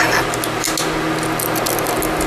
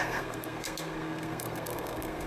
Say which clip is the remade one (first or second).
second